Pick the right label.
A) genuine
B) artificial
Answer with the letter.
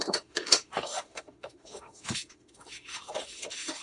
B